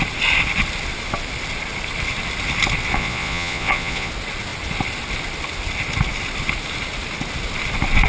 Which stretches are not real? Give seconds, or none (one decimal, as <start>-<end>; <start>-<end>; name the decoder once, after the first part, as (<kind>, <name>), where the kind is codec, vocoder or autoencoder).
2.9-4.1 (vocoder, Vocos)

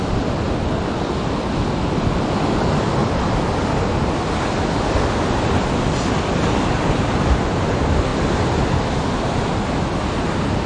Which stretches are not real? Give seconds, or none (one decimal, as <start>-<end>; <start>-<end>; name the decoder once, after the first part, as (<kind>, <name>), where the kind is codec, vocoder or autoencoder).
none

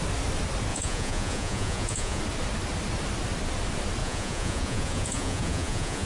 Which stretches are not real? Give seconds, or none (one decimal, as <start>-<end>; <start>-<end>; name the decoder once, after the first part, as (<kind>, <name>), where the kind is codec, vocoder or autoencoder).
0.7-2.2 (vocoder, Vocos); 4.0-6.1

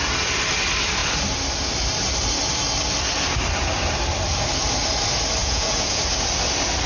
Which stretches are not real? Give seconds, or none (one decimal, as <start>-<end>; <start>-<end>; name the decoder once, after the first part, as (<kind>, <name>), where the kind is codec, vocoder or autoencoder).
5.4-6.0 (vocoder, Vocos)

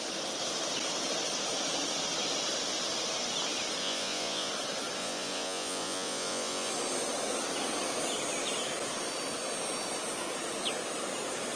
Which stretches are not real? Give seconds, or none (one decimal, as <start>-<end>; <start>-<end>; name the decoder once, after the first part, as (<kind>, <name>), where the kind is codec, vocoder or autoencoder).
3.8-4.5 (vocoder, Vocos); 5.0-6.7

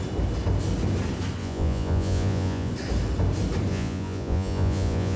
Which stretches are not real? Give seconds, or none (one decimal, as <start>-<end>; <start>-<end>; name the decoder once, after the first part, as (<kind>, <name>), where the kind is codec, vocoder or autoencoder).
1.4-2.7 (vocoder, Vocos); 3.7-5.2

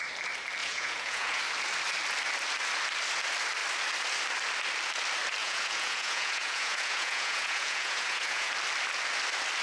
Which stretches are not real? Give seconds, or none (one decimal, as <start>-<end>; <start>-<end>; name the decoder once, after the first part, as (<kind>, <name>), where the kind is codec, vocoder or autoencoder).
0.6-1.4 (vocoder, Vocos); 5.4-8.5